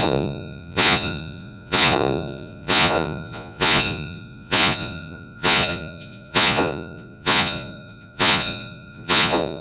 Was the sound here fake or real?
fake